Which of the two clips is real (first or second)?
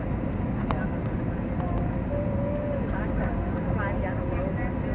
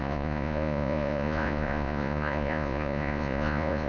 first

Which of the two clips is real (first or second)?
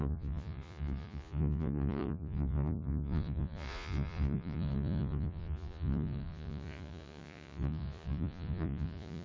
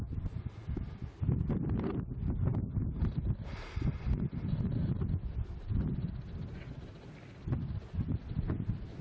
second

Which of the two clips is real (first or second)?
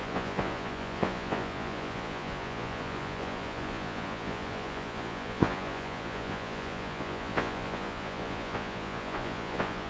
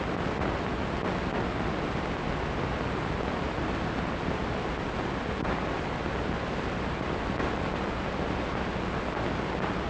second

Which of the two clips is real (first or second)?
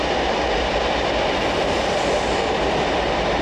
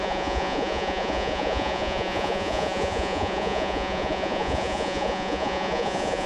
first